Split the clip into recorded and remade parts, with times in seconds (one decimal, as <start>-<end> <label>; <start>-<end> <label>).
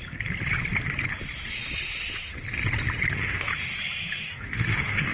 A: 0.0-3.1 recorded; 3.1-3.5 remade; 3.5-4.3 recorded; 4.3-5.1 remade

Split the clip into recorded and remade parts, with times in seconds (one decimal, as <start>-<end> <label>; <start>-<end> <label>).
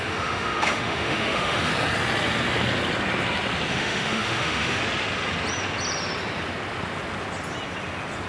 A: 0.0-1.7 remade; 1.7-3.7 recorded; 3.7-4.8 remade; 4.8-8.3 recorded